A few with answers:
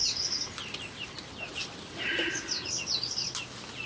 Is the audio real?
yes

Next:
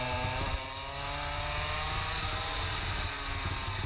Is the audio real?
yes